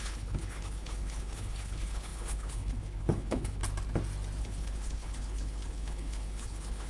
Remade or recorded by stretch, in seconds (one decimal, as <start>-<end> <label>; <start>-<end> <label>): 0.0-3.6 remade; 3.6-4.4 recorded; 4.4-6.9 remade